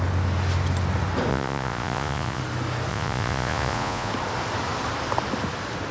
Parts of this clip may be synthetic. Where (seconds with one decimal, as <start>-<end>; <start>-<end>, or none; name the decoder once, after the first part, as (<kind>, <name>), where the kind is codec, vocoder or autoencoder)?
1.3-2.4 (vocoder, Vocos); 2.9-4.1